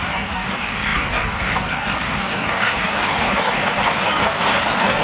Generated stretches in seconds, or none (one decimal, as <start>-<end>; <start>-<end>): 0.0-5.0